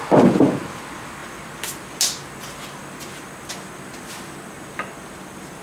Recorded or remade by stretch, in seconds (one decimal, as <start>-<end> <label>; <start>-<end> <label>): 0.0-5.6 recorded

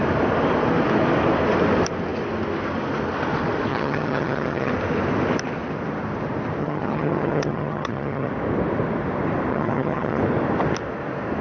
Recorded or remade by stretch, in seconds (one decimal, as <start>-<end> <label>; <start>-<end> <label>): 0.0-3.7 recorded; 3.7-4.7 remade; 4.7-6.6 recorded; 6.6-8.3 remade; 8.3-9.5 recorded; 9.5-10.2 remade; 10.2-11.4 recorded

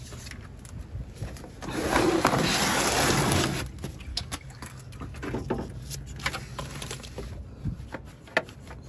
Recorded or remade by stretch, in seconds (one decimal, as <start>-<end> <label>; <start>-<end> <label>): 0.0-4.1 recorded; 4.1-4.9 remade; 4.9-8.9 recorded

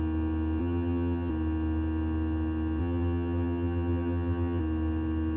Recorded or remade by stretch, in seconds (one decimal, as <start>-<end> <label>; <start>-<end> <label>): 0.0-0.6 recorded; 0.6-1.3 remade; 1.3-2.8 recorded; 2.8-4.6 remade; 4.6-5.4 recorded

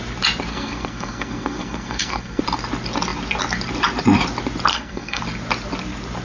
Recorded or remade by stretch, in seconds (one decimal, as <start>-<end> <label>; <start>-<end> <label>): 0.0-0.5 recorded; 0.5-2.4 remade; 2.4-4.7 recorded; 4.7-5.2 remade; 5.2-6.2 recorded